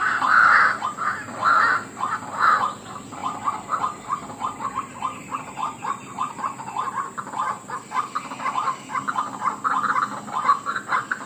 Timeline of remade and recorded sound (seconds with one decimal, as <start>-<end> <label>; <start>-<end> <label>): 0.0-11.3 recorded